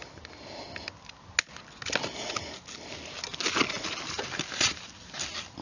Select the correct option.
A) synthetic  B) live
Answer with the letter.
B